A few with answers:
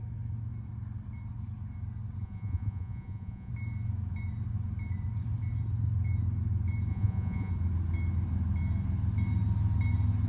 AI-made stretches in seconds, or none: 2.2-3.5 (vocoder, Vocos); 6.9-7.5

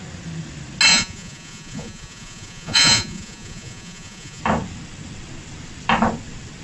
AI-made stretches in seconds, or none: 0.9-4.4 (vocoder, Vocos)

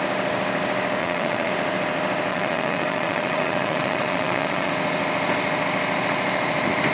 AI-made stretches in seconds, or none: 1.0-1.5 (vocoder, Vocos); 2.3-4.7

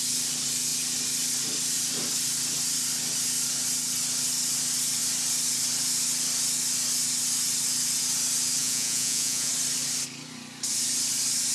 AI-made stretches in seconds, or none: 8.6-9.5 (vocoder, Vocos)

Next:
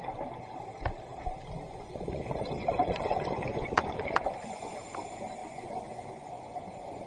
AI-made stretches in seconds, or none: 1.7-4.8 (vocoder, Vocos); 5.4-7.1

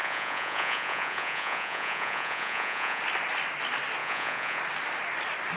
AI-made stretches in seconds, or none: 0.0-3.0 (vocoder, Vocos); 4.0-4.6

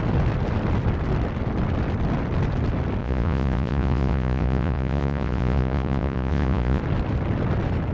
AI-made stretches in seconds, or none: 3.0-6.8 (vocoder, Vocos)